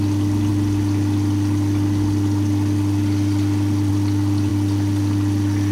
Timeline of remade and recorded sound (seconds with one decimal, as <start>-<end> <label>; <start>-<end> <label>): 0.0-5.7 recorded